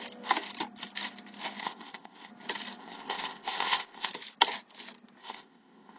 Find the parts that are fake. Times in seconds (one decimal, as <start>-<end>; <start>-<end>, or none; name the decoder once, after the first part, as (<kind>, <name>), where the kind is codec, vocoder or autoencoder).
1.6-2.3 (codec, ZipCodec); 2.8-4.1; 5.2-6.0